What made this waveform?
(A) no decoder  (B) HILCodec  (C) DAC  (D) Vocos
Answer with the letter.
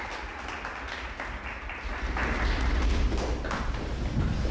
A